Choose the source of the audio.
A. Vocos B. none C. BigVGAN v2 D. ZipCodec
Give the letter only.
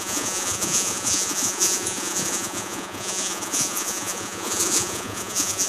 A